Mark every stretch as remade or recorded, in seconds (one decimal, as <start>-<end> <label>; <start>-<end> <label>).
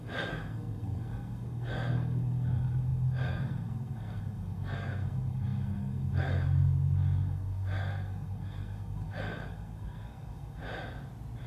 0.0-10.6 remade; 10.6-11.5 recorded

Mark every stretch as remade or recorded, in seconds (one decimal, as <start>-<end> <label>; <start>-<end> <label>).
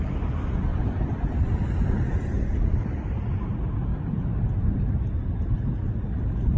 0.0-0.7 recorded; 0.7-2.2 remade; 2.2-3.9 recorded; 3.9-4.8 remade; 4.8-6.6 recorded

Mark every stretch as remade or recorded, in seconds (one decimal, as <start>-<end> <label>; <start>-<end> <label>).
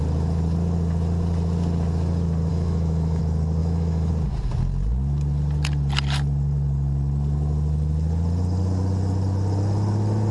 0.0-2.5 recorded; 2.5-3.2 remade; 3.2-3.6 recorded; 3.6-4.1 remade; 4.1-10.3 recorded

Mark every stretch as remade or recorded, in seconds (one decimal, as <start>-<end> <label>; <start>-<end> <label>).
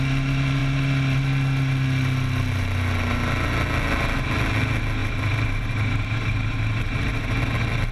0.0-5.0 recorded; 5.0-7.4 remade; 7.4-7.9 recorded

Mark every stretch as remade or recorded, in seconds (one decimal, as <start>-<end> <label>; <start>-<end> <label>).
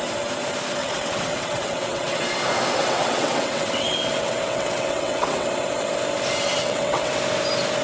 0.0-0.8 recorded; 0.8-2.2 remade; 2.2-2.8 recorded; 2.8-5.5 remade; 5.5-6.5 recorded; 6.5-7.1 remade; 7.1-7.8 recorded